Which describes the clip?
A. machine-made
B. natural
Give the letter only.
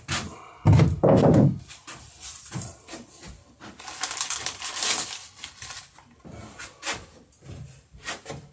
A